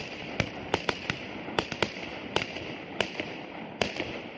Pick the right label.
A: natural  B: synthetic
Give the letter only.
A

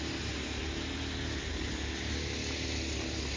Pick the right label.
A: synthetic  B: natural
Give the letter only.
B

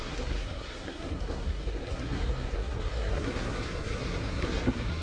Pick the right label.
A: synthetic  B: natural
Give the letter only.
A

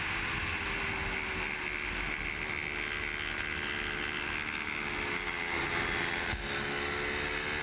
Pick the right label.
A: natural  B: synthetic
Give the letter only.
A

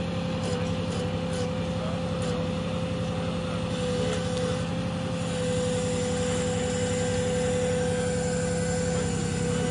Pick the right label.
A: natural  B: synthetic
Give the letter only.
A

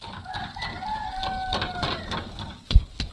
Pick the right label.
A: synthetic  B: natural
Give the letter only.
B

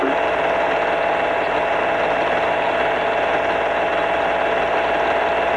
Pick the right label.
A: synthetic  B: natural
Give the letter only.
B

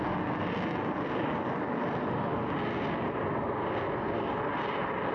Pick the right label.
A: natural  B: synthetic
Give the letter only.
A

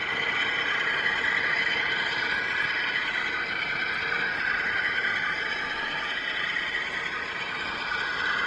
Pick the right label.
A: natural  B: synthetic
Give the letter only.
A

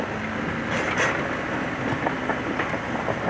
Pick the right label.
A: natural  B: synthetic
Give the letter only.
A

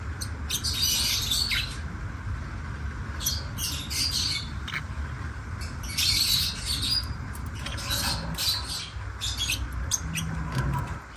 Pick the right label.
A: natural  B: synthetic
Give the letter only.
A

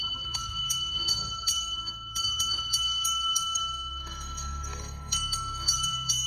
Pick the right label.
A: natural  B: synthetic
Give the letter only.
B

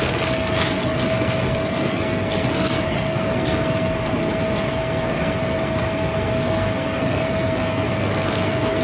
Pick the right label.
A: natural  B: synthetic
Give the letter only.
B